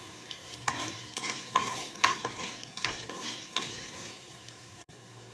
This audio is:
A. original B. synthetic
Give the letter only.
B